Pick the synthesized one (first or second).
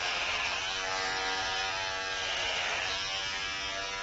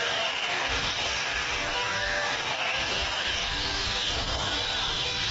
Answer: second